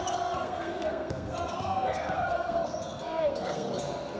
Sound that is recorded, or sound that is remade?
remade